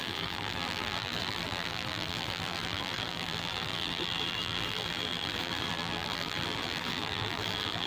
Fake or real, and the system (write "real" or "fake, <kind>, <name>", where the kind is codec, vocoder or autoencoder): fake, vocoder, BigVGAN v2